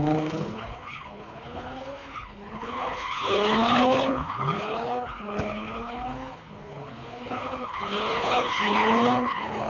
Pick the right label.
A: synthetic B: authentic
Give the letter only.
A